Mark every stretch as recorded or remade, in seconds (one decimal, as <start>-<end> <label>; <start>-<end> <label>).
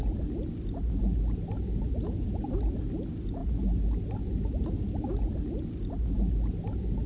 0.0-7.1 recorded